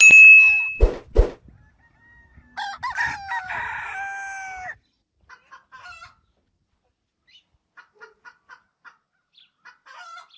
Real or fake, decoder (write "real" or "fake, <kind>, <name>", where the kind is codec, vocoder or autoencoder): real